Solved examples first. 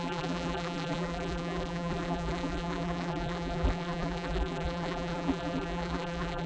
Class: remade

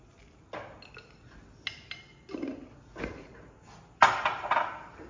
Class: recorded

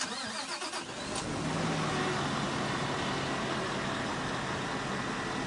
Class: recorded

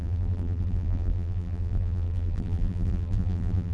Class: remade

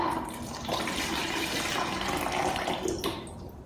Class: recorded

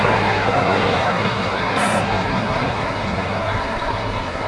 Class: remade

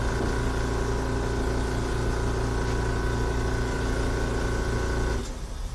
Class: recorded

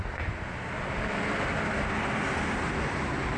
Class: recorded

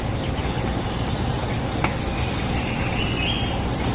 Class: recorded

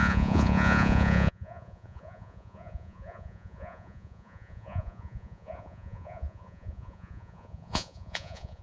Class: remade